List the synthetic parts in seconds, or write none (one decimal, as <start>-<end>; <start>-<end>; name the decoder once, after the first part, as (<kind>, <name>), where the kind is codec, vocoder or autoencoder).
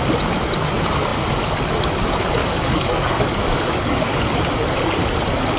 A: 2.4-4.4 (codec, DAC)